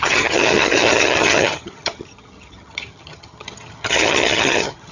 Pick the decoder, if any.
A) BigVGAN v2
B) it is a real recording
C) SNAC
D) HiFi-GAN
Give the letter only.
D